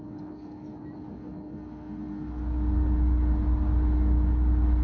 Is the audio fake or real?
real